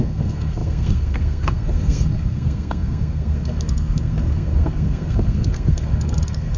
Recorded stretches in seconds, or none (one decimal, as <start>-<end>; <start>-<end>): none